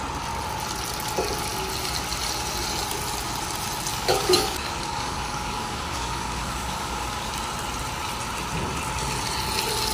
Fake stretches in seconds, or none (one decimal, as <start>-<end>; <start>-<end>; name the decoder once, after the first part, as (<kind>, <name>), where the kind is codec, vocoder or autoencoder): 3.9-7.3 (codec, DAC)